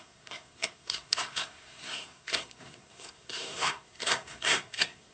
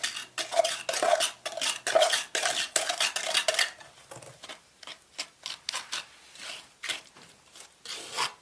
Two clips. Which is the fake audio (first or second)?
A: first